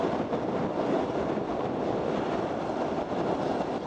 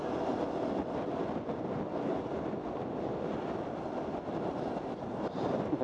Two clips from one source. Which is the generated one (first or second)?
first